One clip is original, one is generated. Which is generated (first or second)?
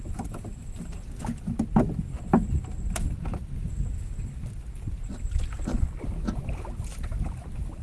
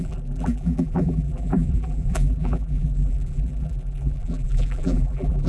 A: second